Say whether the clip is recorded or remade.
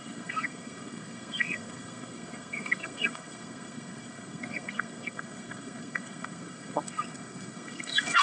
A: remade